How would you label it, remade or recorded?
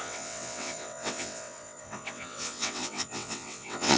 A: remade